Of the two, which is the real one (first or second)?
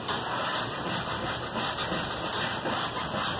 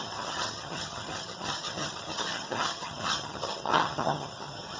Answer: first